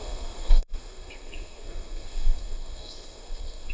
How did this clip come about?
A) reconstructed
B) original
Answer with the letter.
A